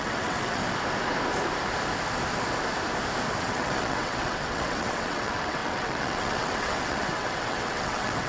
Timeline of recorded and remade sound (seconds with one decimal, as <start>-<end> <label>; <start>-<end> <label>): 0.0-0.6 remade; 0.6-3.4 recorded; 3.4-8.3 remade